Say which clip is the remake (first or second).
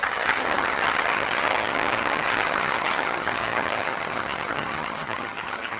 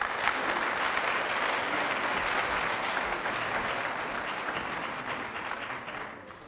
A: first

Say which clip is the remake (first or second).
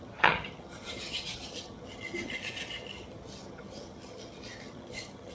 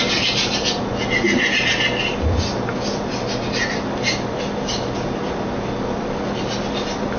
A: first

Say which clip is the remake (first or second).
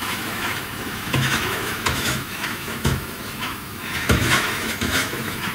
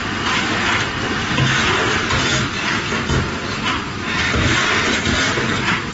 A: first